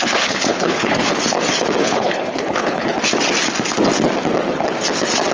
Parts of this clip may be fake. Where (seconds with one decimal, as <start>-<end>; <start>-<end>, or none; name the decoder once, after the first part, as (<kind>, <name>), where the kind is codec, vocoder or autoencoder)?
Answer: 0.0-1.1 (codec, HILCodec); 1.8-3.0